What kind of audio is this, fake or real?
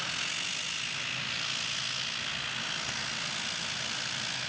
real